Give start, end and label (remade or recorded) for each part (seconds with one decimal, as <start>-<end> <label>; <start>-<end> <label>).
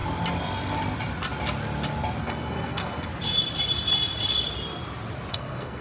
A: 0.0-2.2 recorded; 2.2-3.1 remade; 3.1-5.3 recorded; 5.3-5.8 remade